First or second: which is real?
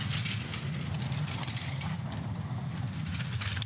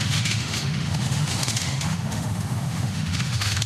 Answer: first